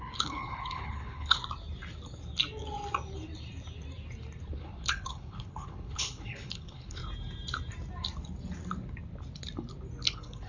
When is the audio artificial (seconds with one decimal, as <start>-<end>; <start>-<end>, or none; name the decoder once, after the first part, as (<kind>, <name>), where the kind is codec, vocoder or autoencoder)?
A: 0.0-1.4 (codec, HILCodec); 4.5-7.0; 10.1-10.5